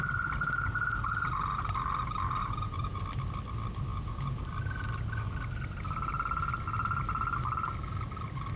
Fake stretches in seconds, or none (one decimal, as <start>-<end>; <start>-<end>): 2.4-3.0; 3.9-4.4